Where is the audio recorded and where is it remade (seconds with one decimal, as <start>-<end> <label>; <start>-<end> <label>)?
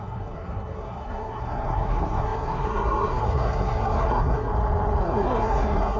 0.0-4.5 remade; 4.5-5.0 recorded; 5.0-6.0 remade